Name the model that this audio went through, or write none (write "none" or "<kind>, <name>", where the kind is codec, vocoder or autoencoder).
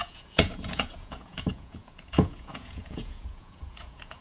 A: vocoder, Vocos